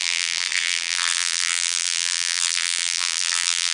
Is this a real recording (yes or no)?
no